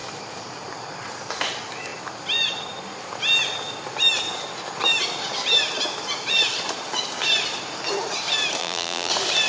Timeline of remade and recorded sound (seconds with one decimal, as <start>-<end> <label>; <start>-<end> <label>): 0.0-8.6 recorded; 8.6-9.1 remade; 9.1-9.5 recorded